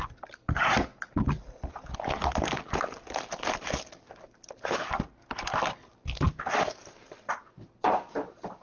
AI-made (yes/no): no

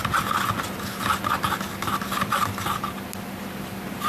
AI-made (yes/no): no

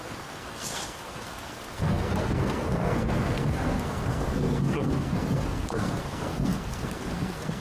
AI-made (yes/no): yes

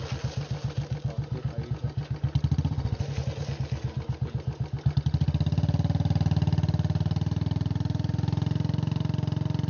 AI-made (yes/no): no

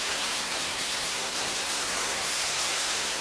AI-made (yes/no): yes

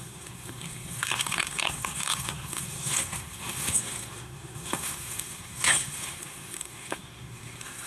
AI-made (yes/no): yes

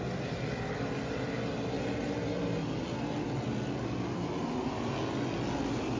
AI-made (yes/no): no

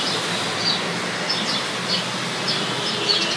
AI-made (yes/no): no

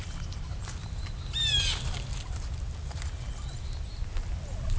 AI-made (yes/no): no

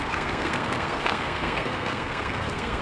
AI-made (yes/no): yes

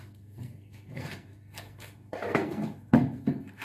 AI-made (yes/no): yes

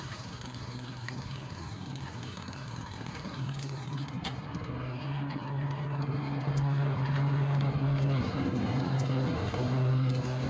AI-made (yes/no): yes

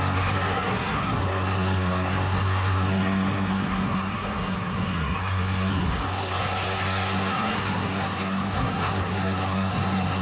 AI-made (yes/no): yes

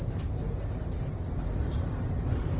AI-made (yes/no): no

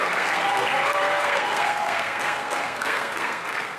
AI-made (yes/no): yes